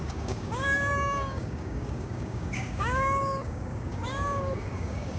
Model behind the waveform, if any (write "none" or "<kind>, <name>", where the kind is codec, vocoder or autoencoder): codec, DAC